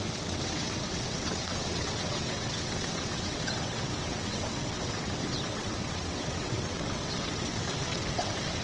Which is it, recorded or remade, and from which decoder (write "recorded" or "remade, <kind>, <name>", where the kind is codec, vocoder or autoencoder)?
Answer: remade, vocoder, WaveNeXt